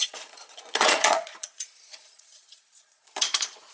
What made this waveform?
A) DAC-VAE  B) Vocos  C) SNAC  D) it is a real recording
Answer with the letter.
B